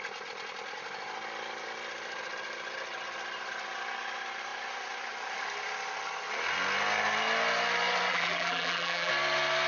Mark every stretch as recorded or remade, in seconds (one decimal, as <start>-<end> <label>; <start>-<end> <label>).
0.0-8.1 recorded; 8.1-9.1 remade; 9.1-9.7 recorded